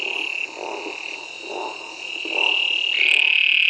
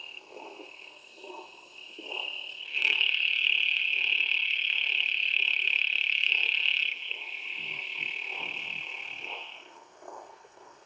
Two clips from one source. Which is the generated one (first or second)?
second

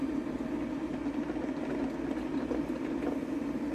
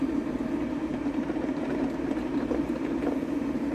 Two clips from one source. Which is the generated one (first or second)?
second